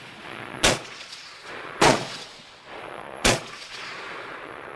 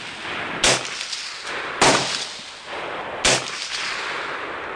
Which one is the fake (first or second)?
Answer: first